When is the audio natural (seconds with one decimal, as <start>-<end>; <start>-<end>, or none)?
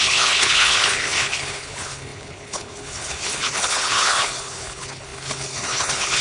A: none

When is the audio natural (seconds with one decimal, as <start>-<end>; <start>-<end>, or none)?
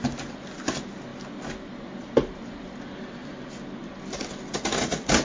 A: 0.0-5.2